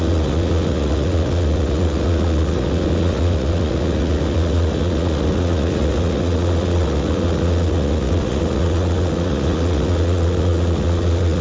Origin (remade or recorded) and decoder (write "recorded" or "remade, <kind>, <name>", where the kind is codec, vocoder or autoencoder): remade, vocoder, Vocos